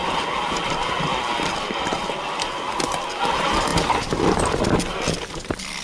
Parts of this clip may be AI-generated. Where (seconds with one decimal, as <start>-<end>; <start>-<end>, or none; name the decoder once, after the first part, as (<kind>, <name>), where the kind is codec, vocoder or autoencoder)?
none